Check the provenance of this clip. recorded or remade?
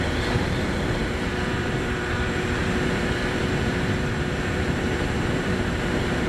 remade